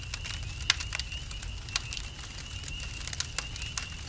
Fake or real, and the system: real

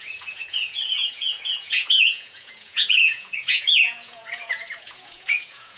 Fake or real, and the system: fake, vocoder, Vocos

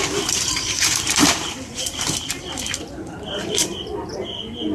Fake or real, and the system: fake, vocoder, BigVGAN v2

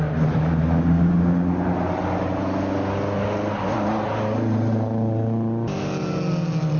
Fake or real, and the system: real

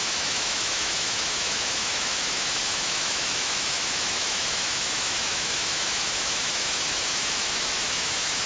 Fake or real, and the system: fake, autoencoder, DAC-VAE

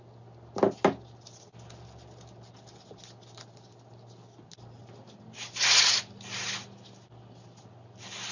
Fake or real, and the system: real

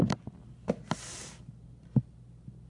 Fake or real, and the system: real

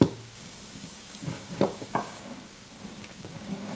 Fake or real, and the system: fake, codec, DAC